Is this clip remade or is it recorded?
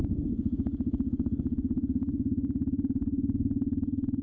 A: remade